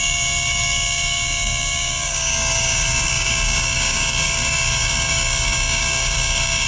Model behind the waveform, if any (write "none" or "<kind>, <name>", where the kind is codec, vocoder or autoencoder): codec, DAC